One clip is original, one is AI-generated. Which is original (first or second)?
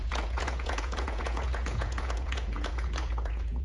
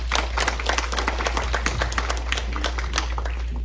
second